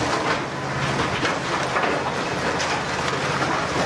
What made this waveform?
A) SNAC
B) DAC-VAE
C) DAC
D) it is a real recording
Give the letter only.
D